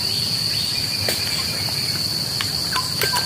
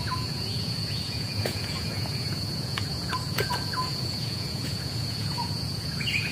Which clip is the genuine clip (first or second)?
first